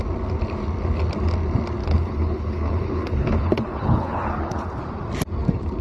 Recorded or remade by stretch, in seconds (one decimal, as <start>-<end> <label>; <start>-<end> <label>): 0.0-1.8 recorded; 1.8-4.8 remade; 4.8-5.8 recorded